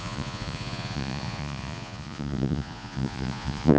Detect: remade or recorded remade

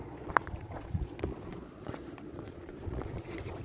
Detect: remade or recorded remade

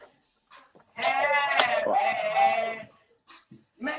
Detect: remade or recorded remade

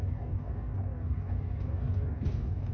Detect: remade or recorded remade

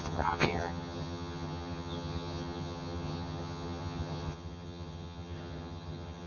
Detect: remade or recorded remade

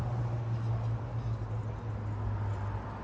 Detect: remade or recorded recorded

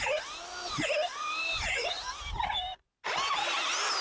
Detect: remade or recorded recorded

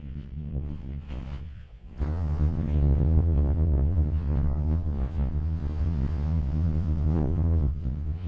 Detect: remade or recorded remade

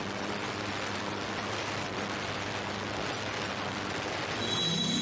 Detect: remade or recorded recorded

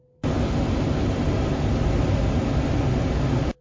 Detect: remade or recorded recorded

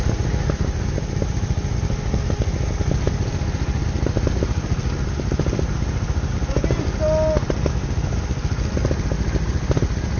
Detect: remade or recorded recorded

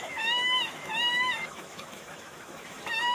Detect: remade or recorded remade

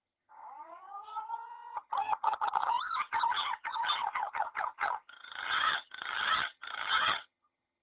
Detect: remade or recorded remade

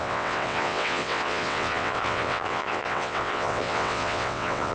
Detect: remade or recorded remade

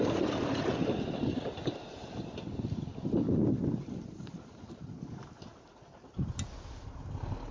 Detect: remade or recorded recorded